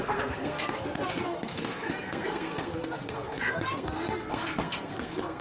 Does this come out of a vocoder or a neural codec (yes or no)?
yes